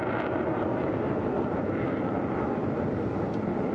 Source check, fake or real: real